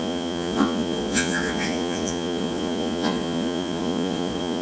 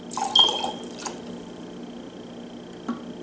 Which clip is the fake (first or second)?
first